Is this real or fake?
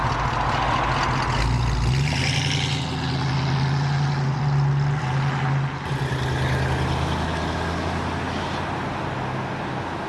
real